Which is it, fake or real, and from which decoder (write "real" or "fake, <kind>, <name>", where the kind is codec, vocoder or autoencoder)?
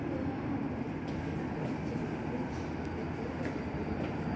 real